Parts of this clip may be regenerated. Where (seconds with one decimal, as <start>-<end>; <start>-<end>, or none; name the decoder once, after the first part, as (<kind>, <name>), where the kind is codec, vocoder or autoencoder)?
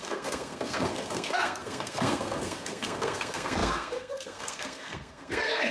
0.0-5.7 (codec, SNAC)